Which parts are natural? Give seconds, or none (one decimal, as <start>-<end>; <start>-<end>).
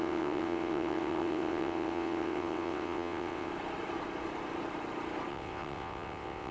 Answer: 3.5-5.3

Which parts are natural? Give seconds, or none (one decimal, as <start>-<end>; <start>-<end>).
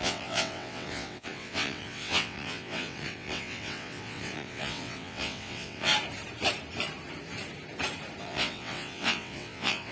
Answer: 5.9-8.2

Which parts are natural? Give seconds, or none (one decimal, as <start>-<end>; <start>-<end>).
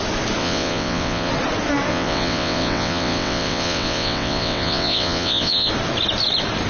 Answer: 0.0-0.4; 1.3-1.9; 5.7-6.7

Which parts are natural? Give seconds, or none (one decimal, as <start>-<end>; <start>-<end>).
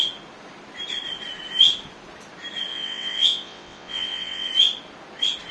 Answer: 0.0-2.7; 4.5-5.5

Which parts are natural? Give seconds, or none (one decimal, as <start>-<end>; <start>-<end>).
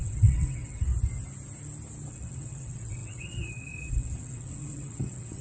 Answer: 0.9-2.1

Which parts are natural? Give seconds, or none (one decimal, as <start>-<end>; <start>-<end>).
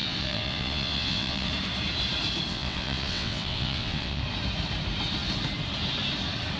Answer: 1.5-2.5; 4.2-6.6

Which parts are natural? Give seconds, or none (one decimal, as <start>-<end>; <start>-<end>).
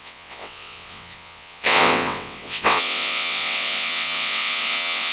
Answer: none